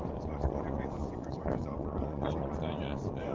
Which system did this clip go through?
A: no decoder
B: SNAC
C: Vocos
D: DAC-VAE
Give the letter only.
C